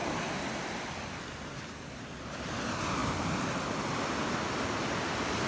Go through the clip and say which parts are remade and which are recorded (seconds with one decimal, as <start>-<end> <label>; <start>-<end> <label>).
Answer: 0.0-5.5 recorded